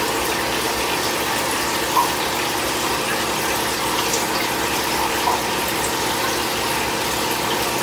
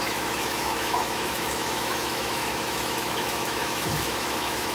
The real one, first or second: first